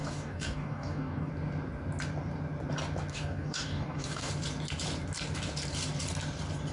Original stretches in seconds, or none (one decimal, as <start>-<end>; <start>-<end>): 1.3-3.1; 4.3-6.7